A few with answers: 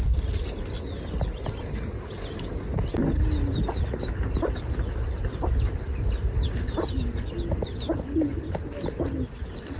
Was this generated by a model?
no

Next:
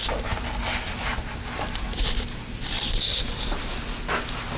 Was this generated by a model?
no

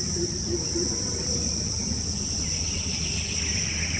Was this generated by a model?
no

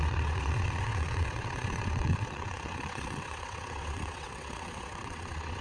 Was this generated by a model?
yes